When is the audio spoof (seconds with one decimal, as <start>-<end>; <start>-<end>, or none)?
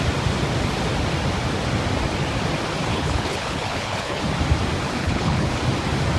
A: 2.9-4.2; 5.0-5.5